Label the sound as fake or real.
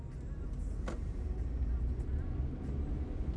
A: real